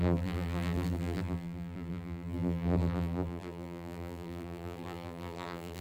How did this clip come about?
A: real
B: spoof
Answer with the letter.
B